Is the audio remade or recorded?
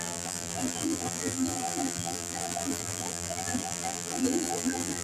remade